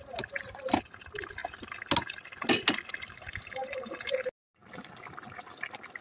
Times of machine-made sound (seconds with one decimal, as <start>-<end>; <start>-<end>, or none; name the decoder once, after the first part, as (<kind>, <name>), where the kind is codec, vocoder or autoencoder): none